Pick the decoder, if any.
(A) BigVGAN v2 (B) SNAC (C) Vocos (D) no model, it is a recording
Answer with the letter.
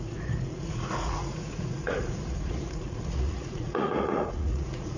C